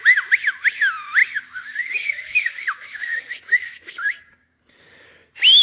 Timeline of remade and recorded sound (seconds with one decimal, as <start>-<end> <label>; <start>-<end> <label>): 0.0-1.2 recorded; 1.2-4.6 remade; 4.6-5.6 recorded